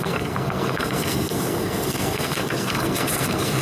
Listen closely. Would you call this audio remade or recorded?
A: remade